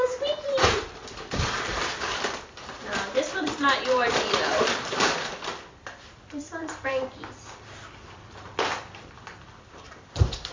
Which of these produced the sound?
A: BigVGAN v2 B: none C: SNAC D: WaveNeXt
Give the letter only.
A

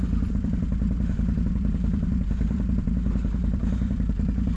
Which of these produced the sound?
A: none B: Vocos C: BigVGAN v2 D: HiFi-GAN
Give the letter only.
C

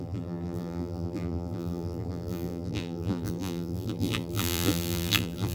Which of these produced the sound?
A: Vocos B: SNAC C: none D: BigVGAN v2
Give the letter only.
D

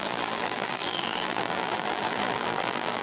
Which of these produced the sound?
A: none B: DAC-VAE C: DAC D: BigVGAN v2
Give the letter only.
D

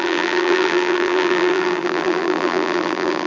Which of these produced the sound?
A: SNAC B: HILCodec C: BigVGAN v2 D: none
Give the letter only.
C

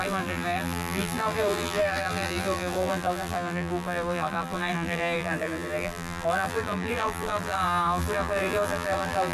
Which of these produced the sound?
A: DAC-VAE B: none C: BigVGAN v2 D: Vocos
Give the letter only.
C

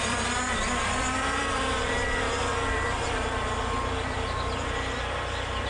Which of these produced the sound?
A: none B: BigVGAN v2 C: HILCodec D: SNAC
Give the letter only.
B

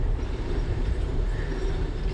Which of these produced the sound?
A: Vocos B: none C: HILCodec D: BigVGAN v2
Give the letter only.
D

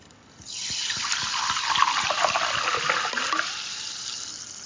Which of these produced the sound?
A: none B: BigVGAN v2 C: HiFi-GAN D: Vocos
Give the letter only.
A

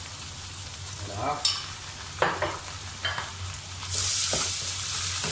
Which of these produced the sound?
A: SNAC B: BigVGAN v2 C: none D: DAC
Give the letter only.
C